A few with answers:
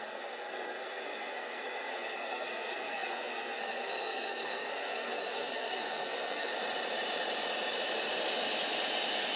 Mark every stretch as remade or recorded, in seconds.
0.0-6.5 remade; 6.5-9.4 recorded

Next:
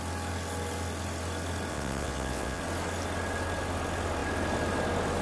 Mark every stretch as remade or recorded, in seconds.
0.0-1.7 recorded; 1.7-2.6 remade; 2.6-5.2 recorded

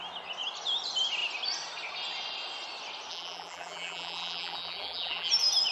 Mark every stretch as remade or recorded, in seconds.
0.0-3.1 recorded; 3.1-5.3 remade; 5.3-5.7 recorded

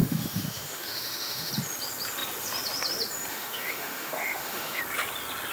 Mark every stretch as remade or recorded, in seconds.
0.0-1.5 remade; 1.5-3.3 recorded; 3.3-4.8 remade; 4.8-5.5 recorded

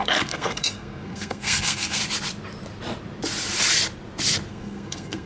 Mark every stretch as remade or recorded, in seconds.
0.0-2.0 remade; 2.0-4.5 recorded; 4.5-5.3 remade

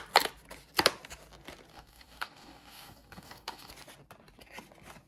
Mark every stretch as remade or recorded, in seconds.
0.0-1.7 recorded; 1.7-3.7 remade; 3.7-5.1 recorded